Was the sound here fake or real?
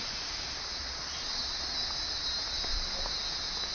real